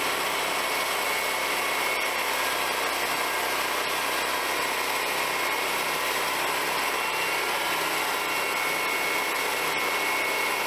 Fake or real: real